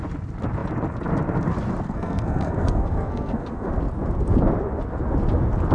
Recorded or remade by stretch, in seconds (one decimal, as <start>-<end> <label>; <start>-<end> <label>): 0.0-1.8 recorded; 1.8-3.7 remade; 3.7-5.7 recorded